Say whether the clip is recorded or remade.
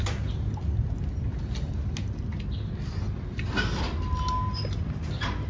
recorded